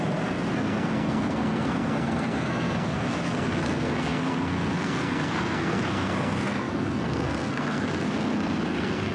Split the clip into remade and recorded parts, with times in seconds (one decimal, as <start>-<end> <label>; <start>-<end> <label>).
0.0-9.1 remade